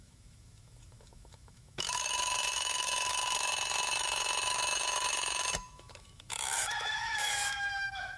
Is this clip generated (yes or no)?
yes